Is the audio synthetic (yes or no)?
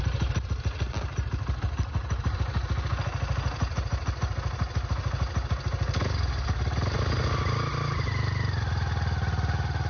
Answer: no